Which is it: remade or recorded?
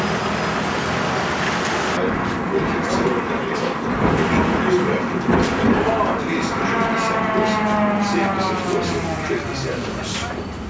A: recorded